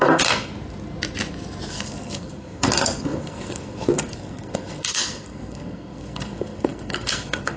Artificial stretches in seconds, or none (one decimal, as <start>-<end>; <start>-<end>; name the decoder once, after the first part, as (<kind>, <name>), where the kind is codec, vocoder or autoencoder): 0.0-0.5 (codec, SNAC); 1.7-7.6